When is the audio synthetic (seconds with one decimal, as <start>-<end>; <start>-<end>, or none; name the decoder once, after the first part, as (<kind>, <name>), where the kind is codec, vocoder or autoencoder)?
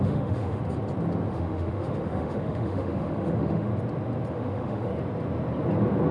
0.0-0.6 (autoencoder, DAC-VAE); 1.3-3.7; 4.3-4.9